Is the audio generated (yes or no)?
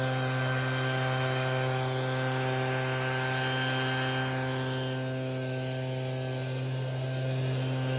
no